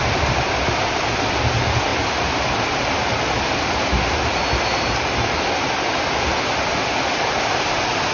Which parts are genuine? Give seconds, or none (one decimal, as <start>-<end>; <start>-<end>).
0.0-8.1